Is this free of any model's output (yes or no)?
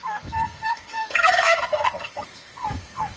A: no